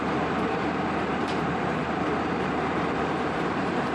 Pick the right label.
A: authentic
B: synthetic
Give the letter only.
B